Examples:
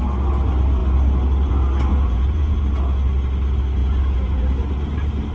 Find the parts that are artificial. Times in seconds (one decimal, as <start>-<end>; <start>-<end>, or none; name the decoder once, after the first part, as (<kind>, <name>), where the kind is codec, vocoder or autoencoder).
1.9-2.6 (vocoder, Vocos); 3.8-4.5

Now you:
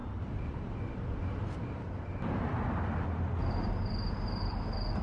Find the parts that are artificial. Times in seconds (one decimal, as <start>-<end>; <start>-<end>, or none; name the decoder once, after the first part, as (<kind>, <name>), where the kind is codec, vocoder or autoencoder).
0.0-0.7 (vocoder, BigVGAN v2); 3.4-4.5

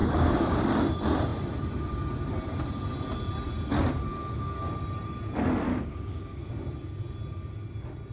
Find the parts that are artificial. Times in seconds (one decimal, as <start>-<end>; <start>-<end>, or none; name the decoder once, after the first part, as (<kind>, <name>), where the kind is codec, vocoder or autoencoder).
0.0-0.6 (codec, DAC); 4.1-4.7; 5.7-6.5

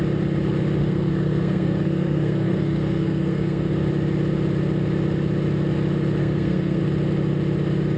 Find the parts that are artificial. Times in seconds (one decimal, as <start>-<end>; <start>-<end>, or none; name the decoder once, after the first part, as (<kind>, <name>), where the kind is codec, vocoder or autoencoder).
0.8-3.7 (codec, SNAC); 6.2-6.8

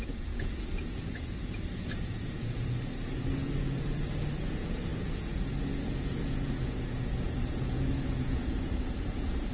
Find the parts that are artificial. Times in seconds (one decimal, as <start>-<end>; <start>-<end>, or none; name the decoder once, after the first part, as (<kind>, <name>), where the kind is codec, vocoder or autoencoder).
0.0-9.5 (vocoder, Vocos)

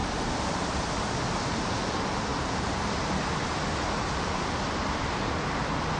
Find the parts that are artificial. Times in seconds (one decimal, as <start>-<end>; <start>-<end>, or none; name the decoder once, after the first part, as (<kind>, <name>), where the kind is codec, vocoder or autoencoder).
0.0-1.1 (vocoder, BigVGAN v2); 2.3-3.1

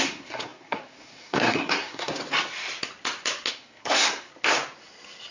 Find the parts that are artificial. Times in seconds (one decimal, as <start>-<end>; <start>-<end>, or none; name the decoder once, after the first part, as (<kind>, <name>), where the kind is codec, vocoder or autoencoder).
0.0-2.2 (codec, SNAC); 3.5-4.3